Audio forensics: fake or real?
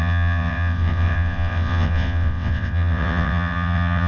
fake